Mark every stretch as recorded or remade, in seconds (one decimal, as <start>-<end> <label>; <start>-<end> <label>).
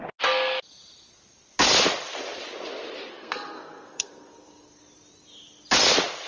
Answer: 0.0-3.1 recorded; 3.1-4.8 remade; 4.8-6.3 recorded